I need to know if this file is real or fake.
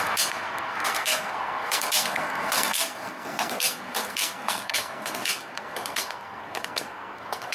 fake